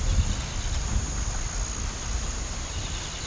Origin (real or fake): real